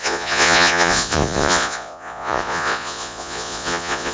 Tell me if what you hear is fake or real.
fake